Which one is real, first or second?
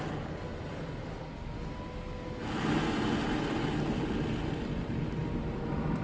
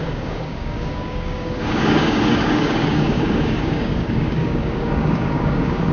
first